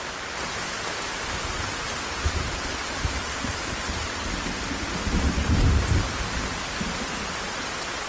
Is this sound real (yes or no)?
yes